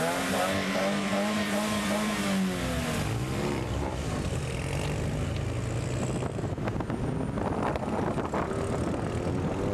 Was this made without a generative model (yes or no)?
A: yes